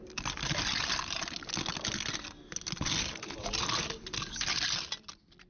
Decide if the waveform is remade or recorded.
recorded